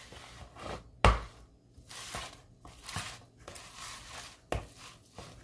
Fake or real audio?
real